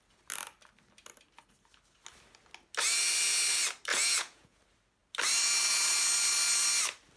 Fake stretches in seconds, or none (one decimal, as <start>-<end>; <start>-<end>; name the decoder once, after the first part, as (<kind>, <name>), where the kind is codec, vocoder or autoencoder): 3.9-4.6 (vocoder, Vocos)